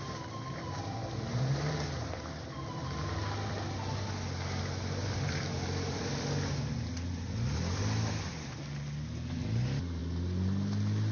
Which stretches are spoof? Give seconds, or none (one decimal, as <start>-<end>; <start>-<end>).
5.0-6.0